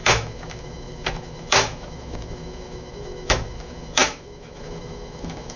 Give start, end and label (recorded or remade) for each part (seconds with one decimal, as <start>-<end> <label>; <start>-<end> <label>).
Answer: 0.0-5.6 remade